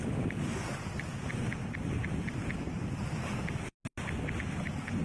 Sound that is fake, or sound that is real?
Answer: real